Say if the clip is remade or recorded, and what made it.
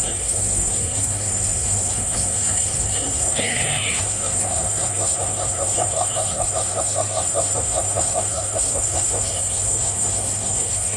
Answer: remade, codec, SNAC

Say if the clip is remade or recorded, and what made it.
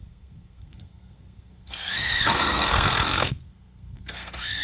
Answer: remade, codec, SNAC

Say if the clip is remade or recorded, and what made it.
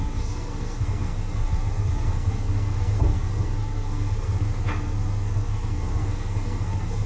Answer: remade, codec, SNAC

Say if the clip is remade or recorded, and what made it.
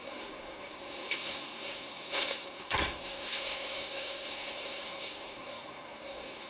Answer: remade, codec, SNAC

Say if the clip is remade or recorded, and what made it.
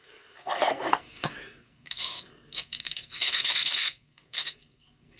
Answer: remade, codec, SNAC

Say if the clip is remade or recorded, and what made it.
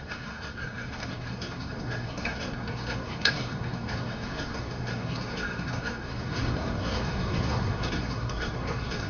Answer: remade, codec, SNAC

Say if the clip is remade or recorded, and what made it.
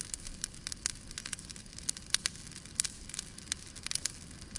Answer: recorded